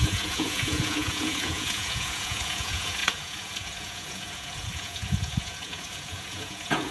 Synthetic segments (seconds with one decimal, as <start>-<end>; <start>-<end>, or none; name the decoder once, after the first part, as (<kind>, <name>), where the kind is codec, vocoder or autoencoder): 0.0-6.9 (vocoder, Vocos)

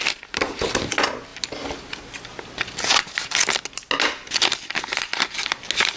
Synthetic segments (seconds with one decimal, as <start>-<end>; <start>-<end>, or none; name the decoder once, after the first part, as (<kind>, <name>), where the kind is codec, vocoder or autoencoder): none

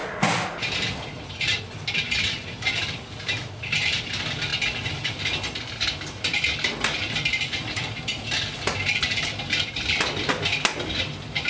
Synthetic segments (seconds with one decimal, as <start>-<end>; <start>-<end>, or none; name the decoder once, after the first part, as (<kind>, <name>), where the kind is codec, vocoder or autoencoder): 0.0-4.5 (vocoder, BigVGAN v2); 6.2-11.5

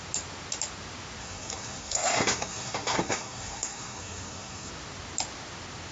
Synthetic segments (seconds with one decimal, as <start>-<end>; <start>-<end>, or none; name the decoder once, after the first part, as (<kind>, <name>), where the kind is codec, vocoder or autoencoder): 1.2-4.7 (codec, SNAC)